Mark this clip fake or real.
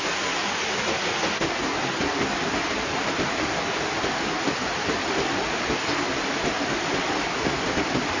real